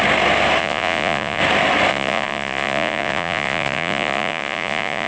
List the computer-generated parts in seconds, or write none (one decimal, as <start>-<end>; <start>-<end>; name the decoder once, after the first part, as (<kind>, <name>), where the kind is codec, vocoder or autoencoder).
0.6-1.4 (vocoder, Vocos); 1.9-5.1